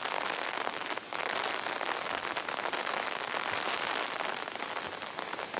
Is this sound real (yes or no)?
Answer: yes